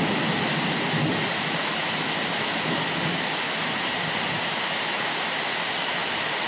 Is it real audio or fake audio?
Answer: real